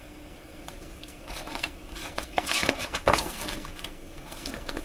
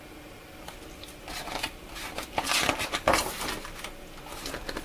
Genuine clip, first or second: second